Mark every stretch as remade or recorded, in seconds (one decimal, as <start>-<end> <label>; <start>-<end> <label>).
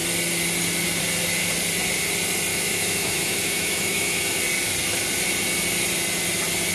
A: 0.0-2.5 recorded; 2.5-4.4 remade; 4.4-6.7 recorded